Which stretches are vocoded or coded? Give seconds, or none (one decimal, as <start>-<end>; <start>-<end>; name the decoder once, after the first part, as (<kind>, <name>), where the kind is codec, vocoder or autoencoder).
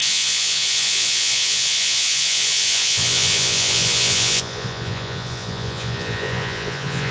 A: 0.0-7.1 (vocoder, Vocos)